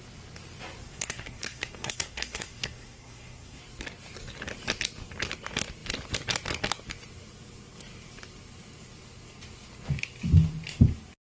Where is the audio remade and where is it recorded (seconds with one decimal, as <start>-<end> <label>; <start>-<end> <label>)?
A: 0.0-0.8 recorded; 0.8-3.6 remade; 3.6-11.3 recorded